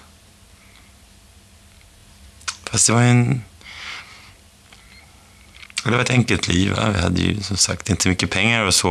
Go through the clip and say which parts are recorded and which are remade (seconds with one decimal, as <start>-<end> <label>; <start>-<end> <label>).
0.0-8.9 recorded